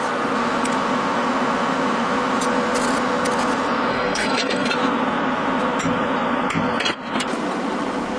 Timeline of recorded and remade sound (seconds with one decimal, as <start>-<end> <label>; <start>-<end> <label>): 0.0-3.9 recorded; 3.9-4.7 remade; 4.7-8.2 recorded